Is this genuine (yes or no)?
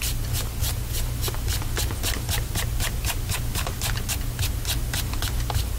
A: yes